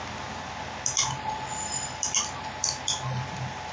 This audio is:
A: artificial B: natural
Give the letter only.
B